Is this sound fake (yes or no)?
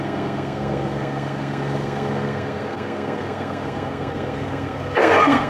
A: yes